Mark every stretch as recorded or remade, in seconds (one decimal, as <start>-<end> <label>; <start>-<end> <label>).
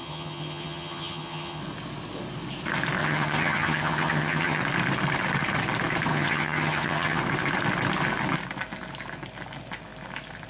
0.0-1.6 remade; 1.6-3.0 recorded; 3.0-4.6 remade; 4.6-6.1 recorded; 6.1-7.2 remade; 7.2-10.5 recorded